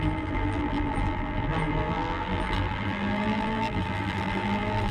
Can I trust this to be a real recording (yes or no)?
no